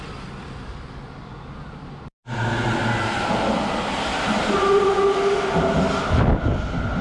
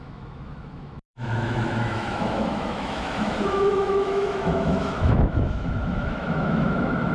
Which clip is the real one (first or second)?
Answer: first